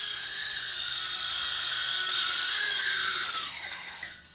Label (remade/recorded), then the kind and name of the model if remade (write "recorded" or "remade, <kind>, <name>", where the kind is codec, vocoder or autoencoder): remade, codec, SNAC